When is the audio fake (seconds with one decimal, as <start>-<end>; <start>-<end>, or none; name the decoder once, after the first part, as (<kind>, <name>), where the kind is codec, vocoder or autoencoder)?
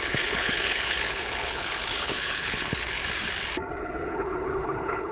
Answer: 0.0-3.0 (codec, HILCodec); 3.8-5.1